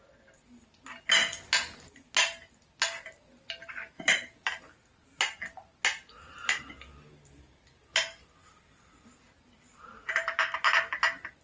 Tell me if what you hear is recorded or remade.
recorded